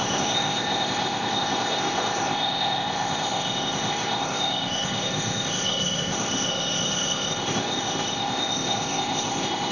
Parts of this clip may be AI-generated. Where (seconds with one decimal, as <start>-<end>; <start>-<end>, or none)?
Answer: 0.0-9.7